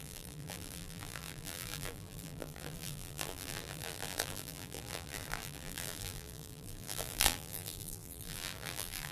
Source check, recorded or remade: remade